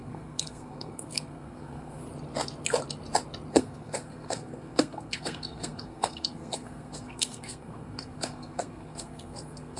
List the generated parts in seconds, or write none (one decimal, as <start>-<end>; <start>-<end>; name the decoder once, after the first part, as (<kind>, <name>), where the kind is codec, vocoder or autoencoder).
0.0-2.0 (codec, SNAC); 3.5-9.8